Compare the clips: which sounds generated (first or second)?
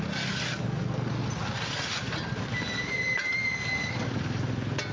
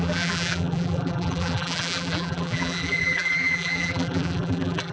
second